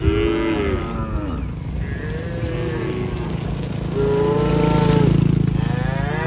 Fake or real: real